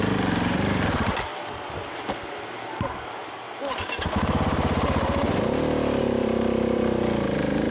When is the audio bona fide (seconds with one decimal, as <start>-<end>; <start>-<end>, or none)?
1.3-2.4; 5.2-6.0